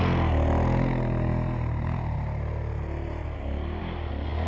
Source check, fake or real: real